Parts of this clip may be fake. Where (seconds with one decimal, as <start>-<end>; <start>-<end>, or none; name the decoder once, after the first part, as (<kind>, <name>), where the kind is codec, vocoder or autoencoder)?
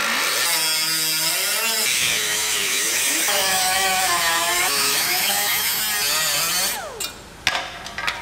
1.9-5.8 (autoencoder, DAC-VAE)